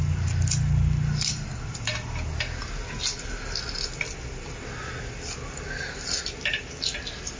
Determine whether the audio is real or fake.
real